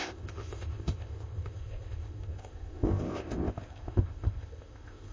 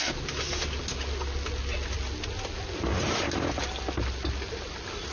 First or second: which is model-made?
first